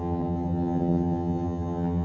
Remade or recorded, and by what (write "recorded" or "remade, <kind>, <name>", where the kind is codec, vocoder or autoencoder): remade, vocoder, HiFi-GAN